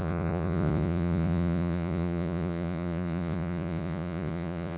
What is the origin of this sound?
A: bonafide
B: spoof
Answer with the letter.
B